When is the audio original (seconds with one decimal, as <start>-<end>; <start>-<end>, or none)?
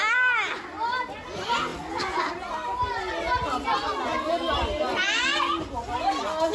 0.0-6.5